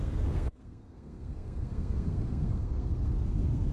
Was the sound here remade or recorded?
remade